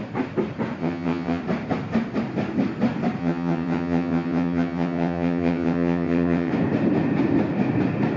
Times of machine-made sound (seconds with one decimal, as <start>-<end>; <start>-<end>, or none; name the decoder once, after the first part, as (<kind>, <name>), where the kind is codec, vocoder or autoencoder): 0.8-1.4 (vocoder, HiFi-GAN); 3.2-6.5